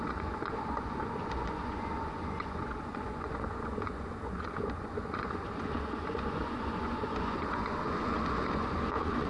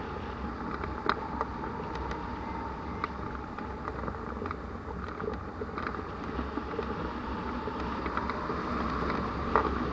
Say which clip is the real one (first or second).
second